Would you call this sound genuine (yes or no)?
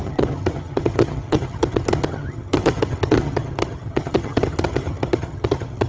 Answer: no